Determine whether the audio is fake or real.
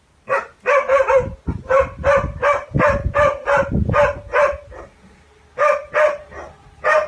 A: real